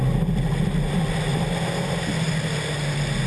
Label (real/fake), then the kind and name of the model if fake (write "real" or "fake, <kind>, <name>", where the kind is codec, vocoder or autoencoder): real